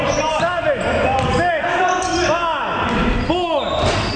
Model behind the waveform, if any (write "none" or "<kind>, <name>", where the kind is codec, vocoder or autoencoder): none